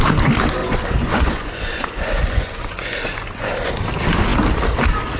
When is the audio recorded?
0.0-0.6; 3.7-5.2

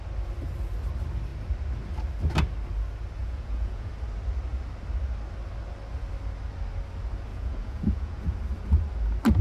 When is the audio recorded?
0.0-3.2; 3.9-7.3; 8.2-9.4

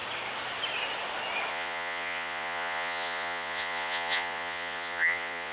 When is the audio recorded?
0.0-1.5